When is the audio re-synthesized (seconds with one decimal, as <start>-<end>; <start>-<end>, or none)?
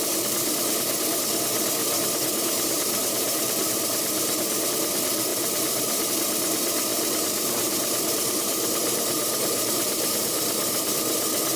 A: 1.8-4.7; 5.3-6.1; 6.9-11.0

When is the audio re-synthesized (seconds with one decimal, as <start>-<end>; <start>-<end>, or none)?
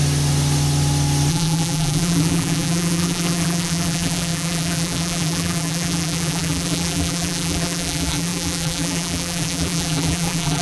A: 1.3-10.6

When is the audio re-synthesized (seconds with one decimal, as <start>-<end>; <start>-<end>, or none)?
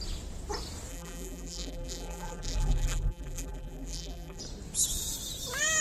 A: 0.9-4.4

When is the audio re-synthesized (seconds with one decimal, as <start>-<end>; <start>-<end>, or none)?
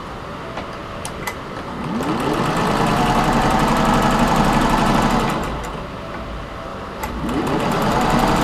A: 0.8-1.8; 2.9-5.0; 6.7-8.4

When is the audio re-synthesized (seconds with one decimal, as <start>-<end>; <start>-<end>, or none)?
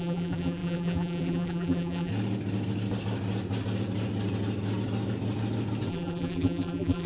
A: 0.0-2.1; 5.9-7.1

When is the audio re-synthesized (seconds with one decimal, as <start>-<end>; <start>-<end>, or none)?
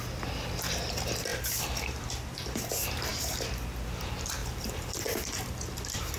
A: 1.3-2.7; 4.4-6.2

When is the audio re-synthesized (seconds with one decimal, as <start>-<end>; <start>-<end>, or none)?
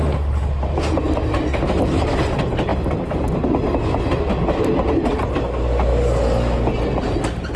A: 0.0-1.6